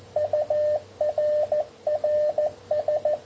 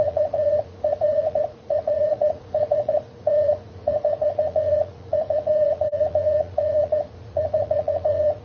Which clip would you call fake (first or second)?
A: second